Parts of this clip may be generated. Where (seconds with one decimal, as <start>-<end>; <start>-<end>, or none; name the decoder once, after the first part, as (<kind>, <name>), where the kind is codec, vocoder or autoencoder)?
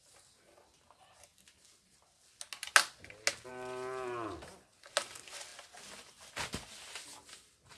none